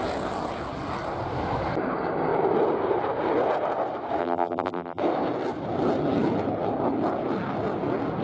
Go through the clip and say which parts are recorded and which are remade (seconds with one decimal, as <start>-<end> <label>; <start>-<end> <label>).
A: 0.0-4.2 recorded; 4.2-5.0 remade; 5.0-8.2 recorded